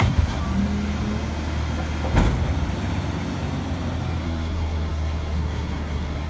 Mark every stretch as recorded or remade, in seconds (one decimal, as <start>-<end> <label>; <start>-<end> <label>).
0.0-0.4 remade; 0.4-4.2 recorded; 4.2-6.3 remade